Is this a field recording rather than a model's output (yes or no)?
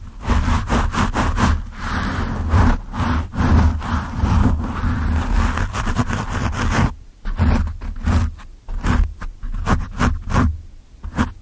yes